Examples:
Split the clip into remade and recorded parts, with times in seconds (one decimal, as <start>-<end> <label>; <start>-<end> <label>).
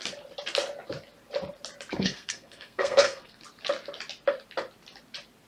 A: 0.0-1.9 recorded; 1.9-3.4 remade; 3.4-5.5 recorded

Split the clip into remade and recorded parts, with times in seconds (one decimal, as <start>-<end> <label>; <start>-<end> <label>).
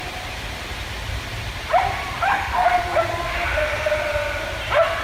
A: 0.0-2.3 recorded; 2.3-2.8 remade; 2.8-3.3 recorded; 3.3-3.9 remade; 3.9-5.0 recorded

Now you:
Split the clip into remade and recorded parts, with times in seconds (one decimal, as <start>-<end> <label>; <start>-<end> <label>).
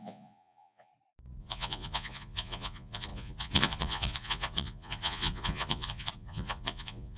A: 0.0-0.9 remade; 0.9-1.4 recorded; 1.4-7.2 remade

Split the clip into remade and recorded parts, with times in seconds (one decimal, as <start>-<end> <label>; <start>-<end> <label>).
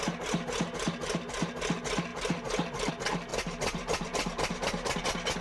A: 0.0-3.3 recorded; 3.3-5.0 remade; 5.0-5.4 recorded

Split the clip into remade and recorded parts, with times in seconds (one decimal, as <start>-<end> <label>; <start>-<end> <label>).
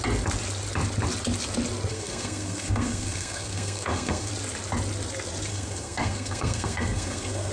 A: 0.0-1.9 recorded; 1.9-4.3 remade; 4.3-5.5 recorded; 5.5-7.5 remade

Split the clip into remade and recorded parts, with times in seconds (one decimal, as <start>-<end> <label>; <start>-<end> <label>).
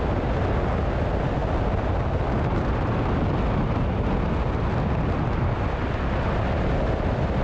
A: 0.0-7.4 recorded